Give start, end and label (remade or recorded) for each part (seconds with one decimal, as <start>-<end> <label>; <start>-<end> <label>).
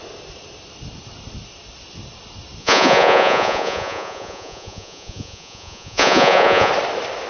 0.0-2.6 recorded; 2.6-6.7 remade; 6.7-7.3 recorded